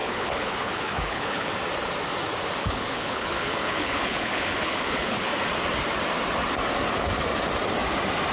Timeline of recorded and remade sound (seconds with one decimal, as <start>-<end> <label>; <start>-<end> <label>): 0.0-1.5 remade; 1.5-2.6 recorded; 2.6-5.3 remade; 5.3-8.3 recorded